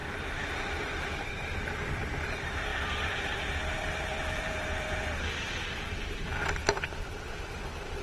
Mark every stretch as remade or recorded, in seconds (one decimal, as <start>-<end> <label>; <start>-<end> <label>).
0.0-8.0 recorded